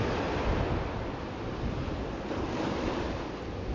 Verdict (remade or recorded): recorded